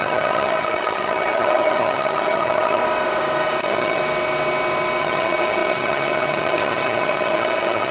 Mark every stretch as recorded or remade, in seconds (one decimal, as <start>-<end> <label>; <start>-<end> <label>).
0.0-2.8 remade; 2.8-3.6 recorded; 3.6-4.0 remade; 4.0-5.0 recorded; 5.0-7.9 remade